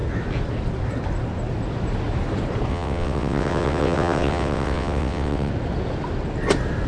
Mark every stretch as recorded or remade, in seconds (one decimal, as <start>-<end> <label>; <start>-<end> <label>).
0.0-2.7 recorded; 2.7-5.5 remade; 5.5-6.9 recorded